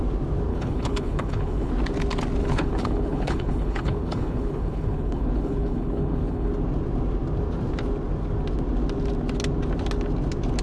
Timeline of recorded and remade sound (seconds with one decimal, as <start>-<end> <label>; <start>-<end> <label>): 0.0-0.5 recorded; 0.5-1.7 remade; 1.7-2.4 recorded; 2.4-6.5 remade; 6.5-10.6 recorded